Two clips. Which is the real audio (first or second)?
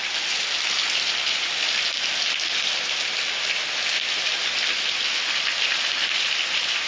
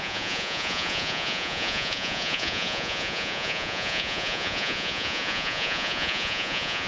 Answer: first